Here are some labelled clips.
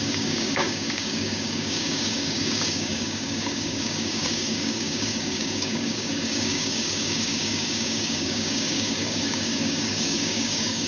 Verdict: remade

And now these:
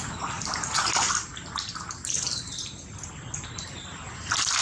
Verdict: recorded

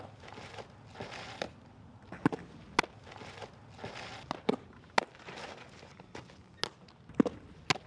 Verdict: recorded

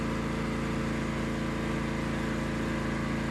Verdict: recorded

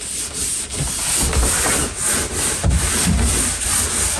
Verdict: recorded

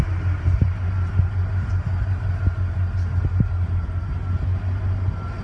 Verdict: recorded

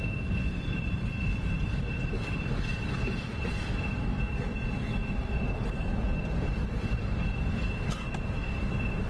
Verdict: remade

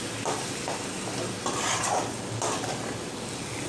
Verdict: recorded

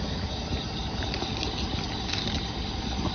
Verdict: recorded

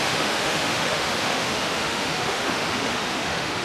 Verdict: remade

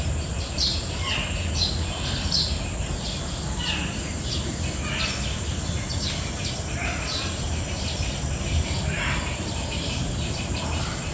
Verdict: recorded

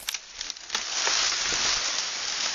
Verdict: recorded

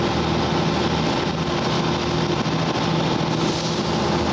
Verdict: recorded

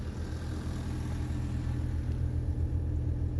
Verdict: recorded